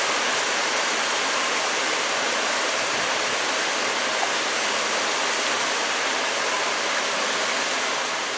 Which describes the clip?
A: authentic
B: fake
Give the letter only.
A